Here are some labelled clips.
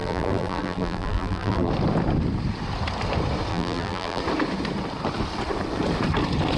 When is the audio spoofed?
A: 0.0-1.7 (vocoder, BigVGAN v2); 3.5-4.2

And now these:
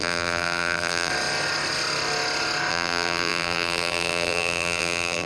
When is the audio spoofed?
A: 0.0-1.1 (vocoder, BigVGAN v2); 2.7-5.3

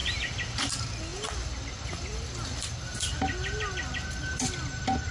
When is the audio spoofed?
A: none

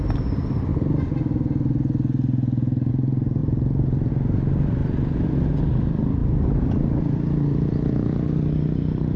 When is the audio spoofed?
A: 0.0-0.7 (vocoder, BigVGAN v2); 2.9-3.4; 4.1-4.8; 5.6-6.2; 7.0-9.2

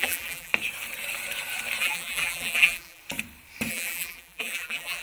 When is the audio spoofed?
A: 0.0-0.5 (vocoder, BigVGAN v2); 1.8-3.0; 3.7-5.0

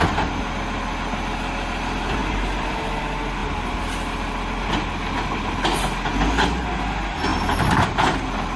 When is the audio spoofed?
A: 2.2-3.0 (vocoder, BigVGAN v2); 7.3-8.2